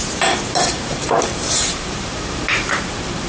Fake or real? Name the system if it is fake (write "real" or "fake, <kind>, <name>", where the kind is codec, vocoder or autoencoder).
fake, vocoder, BigVGAN v2